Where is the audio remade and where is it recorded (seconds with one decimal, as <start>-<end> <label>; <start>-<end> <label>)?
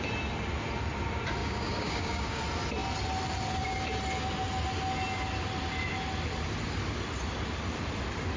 0.0-1.4 recorded; 1.4-2.4 remade; 2.4-8.4 recorded